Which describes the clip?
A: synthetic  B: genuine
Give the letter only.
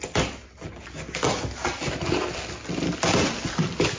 B